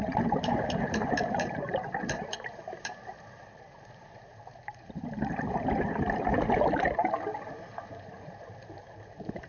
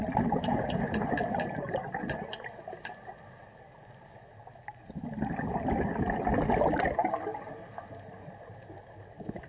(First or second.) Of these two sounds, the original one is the second